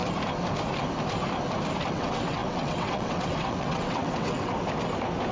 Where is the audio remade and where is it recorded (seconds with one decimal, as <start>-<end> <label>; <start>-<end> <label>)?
0.0-1.9 recorded; 1.9-4.5 remade; 4.5-5.3 recorded